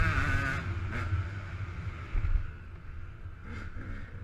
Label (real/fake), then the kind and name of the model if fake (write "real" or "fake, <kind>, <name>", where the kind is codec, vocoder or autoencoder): real